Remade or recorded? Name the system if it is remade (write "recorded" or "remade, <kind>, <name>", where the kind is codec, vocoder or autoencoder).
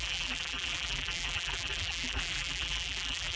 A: remade, vocoder, BigVGAN v2